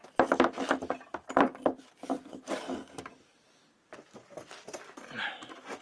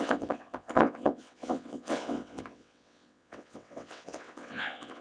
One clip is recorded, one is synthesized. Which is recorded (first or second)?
first